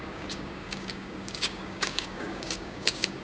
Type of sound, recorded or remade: remade